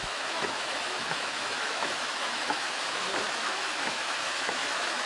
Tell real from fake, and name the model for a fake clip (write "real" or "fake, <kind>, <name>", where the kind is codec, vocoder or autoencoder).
fake, autoencoder, DAC-VAE